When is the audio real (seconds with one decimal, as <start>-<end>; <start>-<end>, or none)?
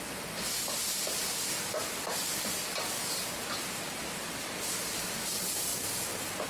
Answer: 0.0-6.5